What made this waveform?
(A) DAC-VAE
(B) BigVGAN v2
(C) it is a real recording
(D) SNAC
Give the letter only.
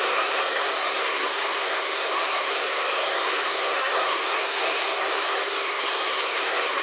D